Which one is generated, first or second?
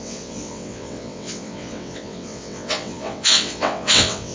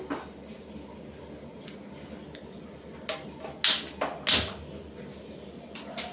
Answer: first